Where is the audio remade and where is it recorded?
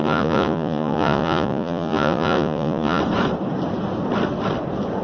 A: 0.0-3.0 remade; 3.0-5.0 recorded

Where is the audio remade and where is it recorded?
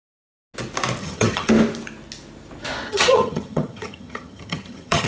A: 0.0-1.0 recorded; 1.0-1.5 remade; 1.5-2.9 recorded; 2.9-5.1 remade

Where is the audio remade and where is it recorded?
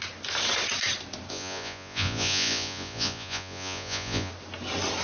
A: 0.0-1.3 recorded; 1.3-4.3 remade; 4.3-5.0 recorded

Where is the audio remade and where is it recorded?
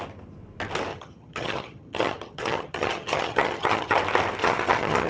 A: 0.0-0.9 recorded; 0.9-4.0 remade; 4.0-4.4 recorded; 4.4-5.1 remade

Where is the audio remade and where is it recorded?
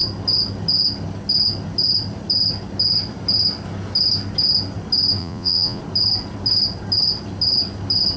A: 0.0-5.2 recorded; 5.2-5.8 remade; 5.8-8.2 recorded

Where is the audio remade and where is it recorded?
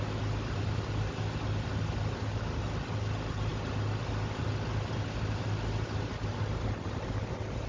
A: 0.0-7.7 recorded